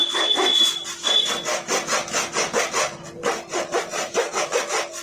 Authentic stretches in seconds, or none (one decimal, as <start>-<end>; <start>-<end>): 0.0-3.7; 4.3-5.0